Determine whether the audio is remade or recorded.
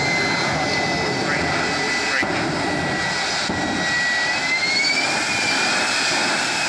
recorded